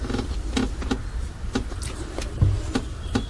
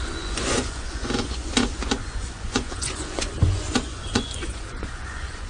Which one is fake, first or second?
second